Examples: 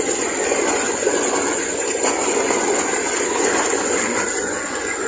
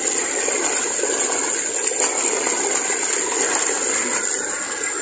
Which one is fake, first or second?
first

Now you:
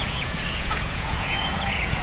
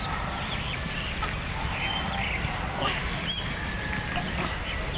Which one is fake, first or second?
first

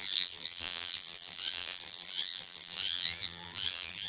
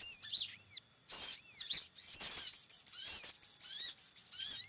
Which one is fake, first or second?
first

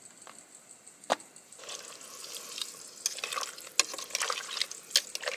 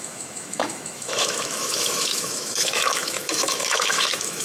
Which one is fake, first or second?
second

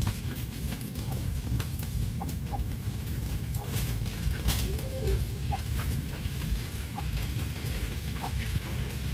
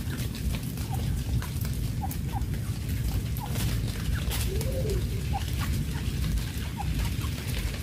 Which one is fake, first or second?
first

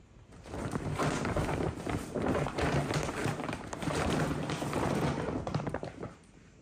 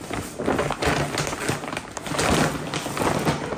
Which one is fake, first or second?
first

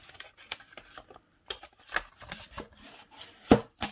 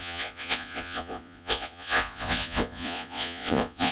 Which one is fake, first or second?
second